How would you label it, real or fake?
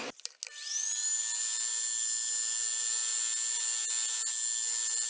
real